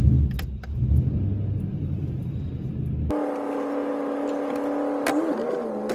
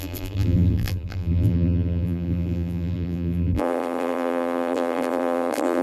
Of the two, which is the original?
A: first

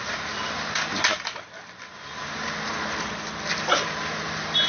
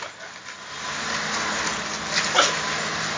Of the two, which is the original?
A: second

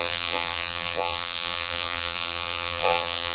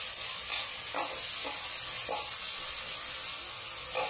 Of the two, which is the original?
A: second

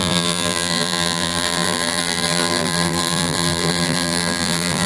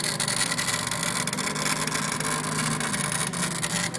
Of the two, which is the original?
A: second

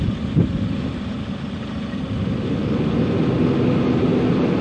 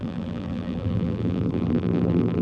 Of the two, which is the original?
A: first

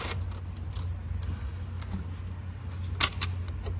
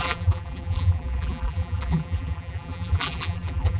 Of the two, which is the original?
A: first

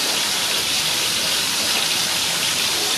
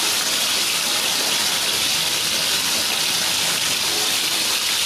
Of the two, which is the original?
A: second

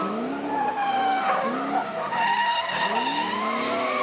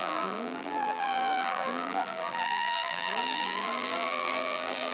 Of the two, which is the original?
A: first